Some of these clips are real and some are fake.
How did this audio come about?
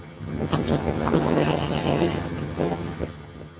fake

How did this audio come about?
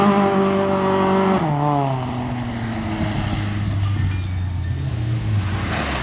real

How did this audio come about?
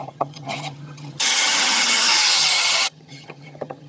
fake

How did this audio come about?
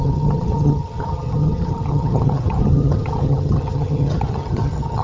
fake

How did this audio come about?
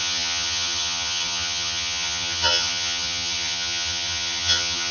fake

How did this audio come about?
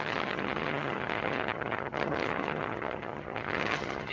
fake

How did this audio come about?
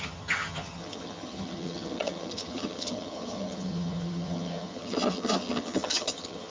fake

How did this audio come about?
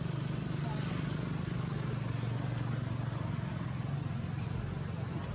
real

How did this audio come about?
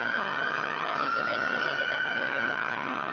fake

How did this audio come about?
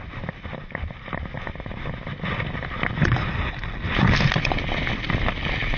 real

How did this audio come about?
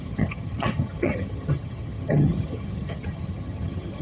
fake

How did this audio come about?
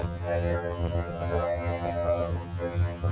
fake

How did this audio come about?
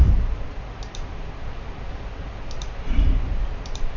real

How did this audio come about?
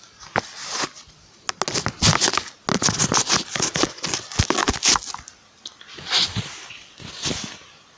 real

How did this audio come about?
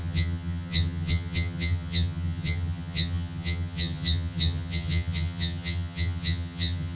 fake